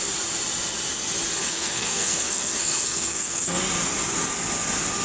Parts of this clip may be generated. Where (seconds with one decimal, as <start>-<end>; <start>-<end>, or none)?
1.4-3.6